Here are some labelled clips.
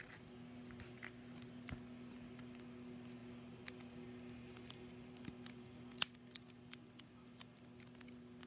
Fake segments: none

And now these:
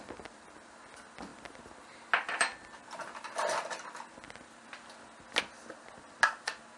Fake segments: none

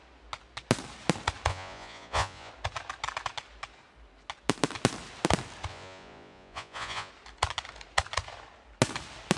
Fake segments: 1.5-2.5; 5.7-7.1

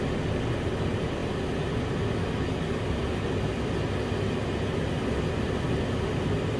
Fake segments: none

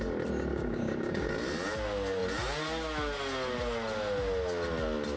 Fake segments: 0.5-1.3

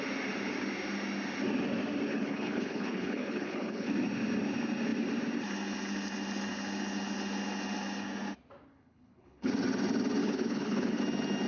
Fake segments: 2.1-3.9; 8.7-9.5; 10.2-11.0